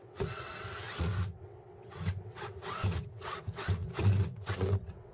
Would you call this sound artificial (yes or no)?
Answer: yes